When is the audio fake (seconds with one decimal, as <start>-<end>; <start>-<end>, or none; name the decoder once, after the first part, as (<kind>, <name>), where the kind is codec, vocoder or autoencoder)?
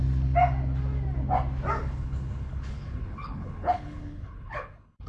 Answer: 1.8-5.1 (codec, HILCodec)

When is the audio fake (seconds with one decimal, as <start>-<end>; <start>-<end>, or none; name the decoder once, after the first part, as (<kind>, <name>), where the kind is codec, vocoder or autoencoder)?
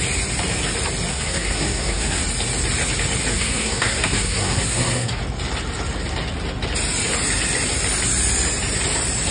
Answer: 1.1-2.2 (codec, SNAC); 3.3-5.2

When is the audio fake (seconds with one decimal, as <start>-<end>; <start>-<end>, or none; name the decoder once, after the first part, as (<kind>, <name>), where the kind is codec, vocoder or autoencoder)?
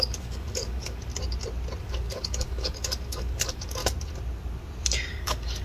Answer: 0.0-1.1 (codec, DAC); 1.8-3.8; 5.1-5.6